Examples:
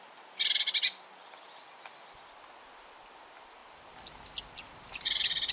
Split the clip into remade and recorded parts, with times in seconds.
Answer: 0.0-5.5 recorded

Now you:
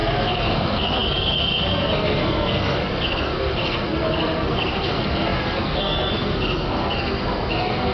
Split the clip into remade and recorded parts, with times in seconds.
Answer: 0.0-7.9 remade

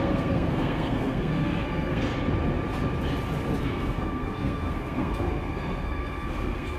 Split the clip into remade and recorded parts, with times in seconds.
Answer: 0.0-2.1 remade; 2.1-3.6 recorded; 3.6-6.8 remade